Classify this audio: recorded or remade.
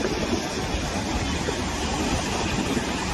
recorded